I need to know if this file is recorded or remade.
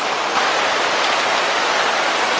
recorded